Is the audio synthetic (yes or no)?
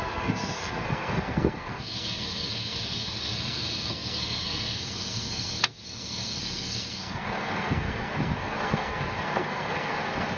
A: yes